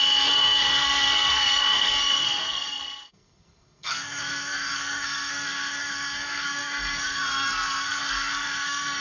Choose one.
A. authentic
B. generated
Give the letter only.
B